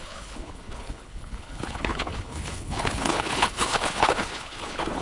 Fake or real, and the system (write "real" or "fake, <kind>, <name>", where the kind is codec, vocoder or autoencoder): fake, codec, HILCodec